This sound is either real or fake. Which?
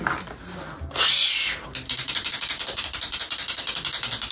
real